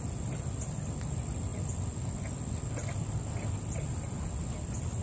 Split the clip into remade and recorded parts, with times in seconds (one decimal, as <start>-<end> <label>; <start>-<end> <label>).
0.0-5.0 recorded